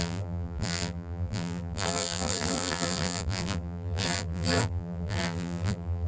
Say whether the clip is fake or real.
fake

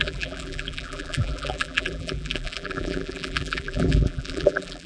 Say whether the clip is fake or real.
fake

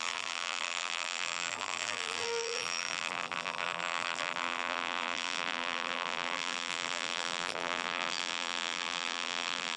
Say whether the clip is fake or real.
fake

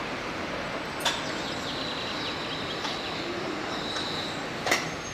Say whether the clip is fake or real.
real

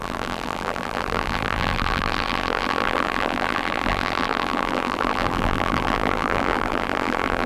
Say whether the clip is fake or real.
fake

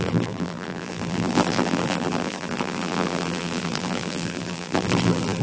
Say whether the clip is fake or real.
fake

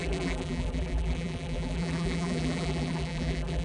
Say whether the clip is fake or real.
fake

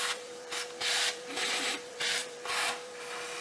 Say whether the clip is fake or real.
fake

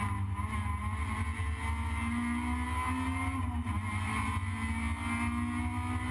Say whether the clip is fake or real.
real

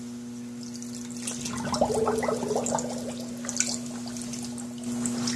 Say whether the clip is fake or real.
real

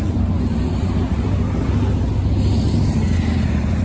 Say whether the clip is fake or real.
real